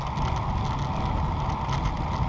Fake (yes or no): no